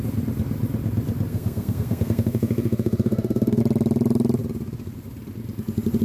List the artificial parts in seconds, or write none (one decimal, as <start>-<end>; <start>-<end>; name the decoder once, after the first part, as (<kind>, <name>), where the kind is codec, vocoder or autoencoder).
1.3-3.6 (codec, SNAC)